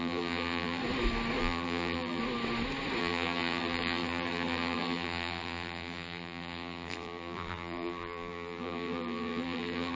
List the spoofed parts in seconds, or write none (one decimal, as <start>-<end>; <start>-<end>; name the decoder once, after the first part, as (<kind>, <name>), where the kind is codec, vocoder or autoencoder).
0.0-0.8 (vocoder, BigVGAN v2); 1.4-2.2; 3.0-9.9